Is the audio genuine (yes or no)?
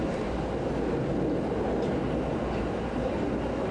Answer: yes